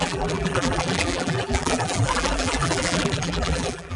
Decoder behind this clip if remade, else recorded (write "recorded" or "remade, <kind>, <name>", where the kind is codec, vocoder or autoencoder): remade, vocoder, BigVGAN v2